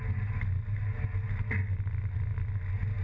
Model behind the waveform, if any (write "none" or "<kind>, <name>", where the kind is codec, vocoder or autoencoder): none